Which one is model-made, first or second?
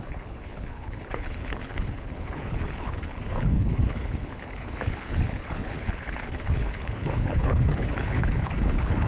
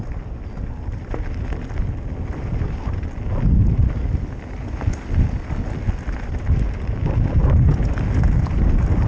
first